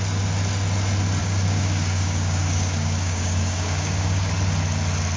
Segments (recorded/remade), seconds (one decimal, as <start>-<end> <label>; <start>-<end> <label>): 0.0-1.2 recorded; 1.2-4.3 remade; 4.3-5.2 recorded

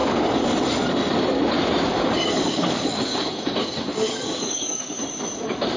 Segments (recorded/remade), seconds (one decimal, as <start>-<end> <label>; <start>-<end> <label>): 0.0-0.5 remade; 0.5-1.9 recorded; 1.9-5.0 remade; 5.0-5.8 recorded

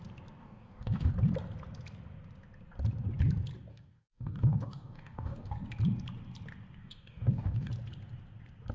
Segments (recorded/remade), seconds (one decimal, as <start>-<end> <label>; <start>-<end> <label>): 0.0-0.4 recorded; 0.4-1.1 remade; 1.1-3.7 recorded; 3.7-5.5 remade; 5.5-6.8 recorded; 6.8-7.7 remade; 7.7-8.7 recorded

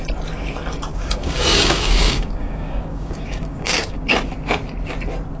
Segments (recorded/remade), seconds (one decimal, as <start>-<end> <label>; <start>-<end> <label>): 0.0-0.9 recorded; 0.9-4.1 remade; 4.1-5.4 recorded

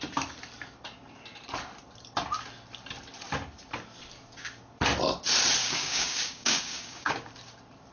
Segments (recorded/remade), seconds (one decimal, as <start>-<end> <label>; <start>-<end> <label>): 0.0-5.6 recorded; 5.6-7.3 remade; 7.3-7.9 recorded

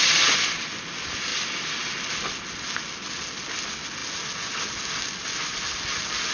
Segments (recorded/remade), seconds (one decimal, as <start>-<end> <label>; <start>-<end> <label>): 0.0-6.3 recorded